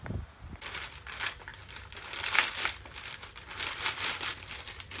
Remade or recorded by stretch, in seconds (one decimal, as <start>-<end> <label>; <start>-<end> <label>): 0.0-5.0 recorded